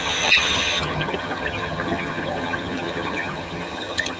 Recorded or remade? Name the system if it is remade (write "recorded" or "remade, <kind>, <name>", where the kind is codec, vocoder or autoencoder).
remade, vocoder, HiFi-GAN